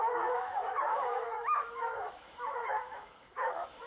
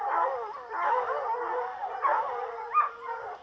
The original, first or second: second